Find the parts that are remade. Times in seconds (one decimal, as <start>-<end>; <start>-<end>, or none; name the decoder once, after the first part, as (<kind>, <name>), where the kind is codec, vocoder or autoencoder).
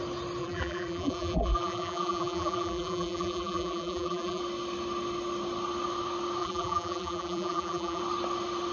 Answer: 0.4-4.4 (vocoder, BigVGAN v2); 6.4-8.0